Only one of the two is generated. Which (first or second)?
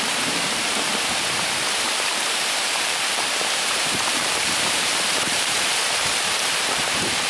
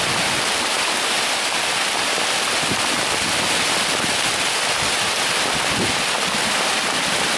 first